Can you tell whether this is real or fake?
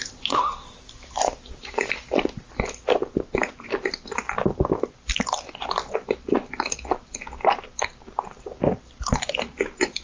real